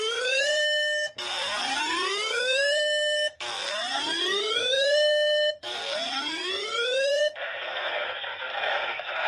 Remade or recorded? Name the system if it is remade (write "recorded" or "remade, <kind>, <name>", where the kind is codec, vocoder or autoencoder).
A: remade, codec, SNAC